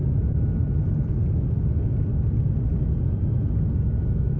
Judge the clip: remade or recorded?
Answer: recorded